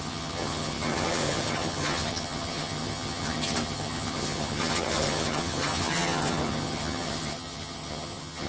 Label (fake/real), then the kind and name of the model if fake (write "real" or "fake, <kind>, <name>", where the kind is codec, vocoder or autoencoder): fake, vocoder, HiFi-GAN